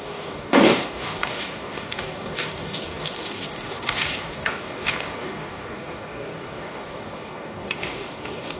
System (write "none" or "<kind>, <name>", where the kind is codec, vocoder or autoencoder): codec, DAC